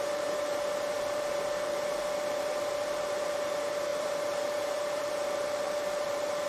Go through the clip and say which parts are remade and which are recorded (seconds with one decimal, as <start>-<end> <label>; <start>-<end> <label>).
0.0-6.5 remade